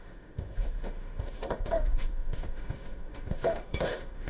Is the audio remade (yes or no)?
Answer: yes